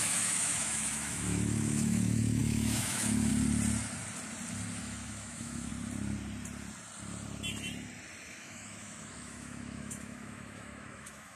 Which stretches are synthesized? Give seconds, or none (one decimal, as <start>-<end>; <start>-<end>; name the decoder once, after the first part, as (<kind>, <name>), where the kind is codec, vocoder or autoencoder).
0.0-3.3 (autoencoder, DAC-VAE); 4.8-5.7; 8.3-11.4